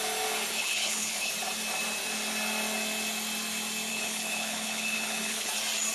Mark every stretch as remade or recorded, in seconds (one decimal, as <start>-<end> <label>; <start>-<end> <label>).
0.0-0.5 recorded; 0.5-1.3 remade; 1.3-3.9 recorded; 3.9-5.5 remade; 5.5-5.9 recorded

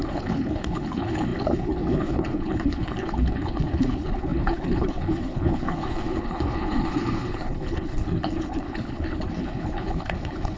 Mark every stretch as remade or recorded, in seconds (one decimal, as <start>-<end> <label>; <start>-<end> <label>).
0.0-10.6 remade